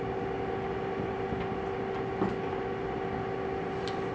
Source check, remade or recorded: recorded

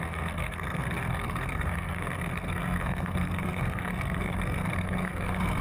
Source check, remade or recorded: remade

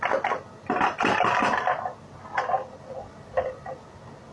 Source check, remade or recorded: recorded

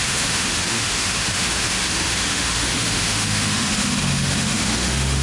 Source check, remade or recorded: remade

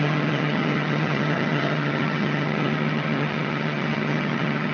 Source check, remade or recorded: remade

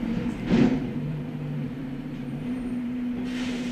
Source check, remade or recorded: remade